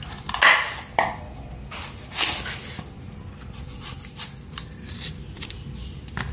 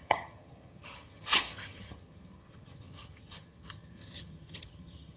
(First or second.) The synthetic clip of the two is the second